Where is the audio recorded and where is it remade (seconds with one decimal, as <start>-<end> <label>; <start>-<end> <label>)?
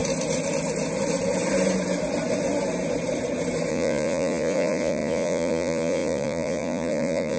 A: 0.0-3.7 recorded; 3.7-7.4 remade